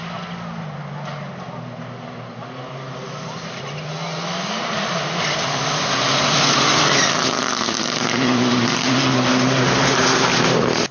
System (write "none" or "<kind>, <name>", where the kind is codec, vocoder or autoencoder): none